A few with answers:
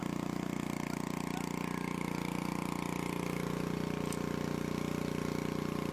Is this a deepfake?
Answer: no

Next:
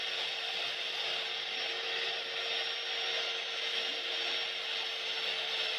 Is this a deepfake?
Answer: no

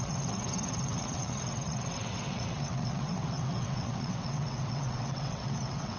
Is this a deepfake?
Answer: yes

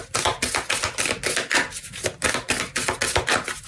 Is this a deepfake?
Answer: no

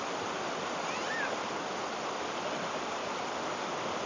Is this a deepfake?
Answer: no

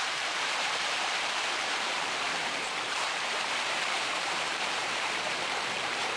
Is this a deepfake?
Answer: yes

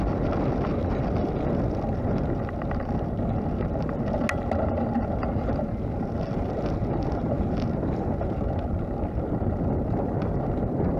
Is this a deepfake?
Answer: no